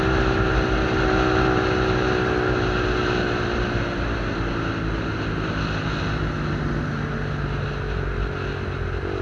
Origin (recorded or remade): recorded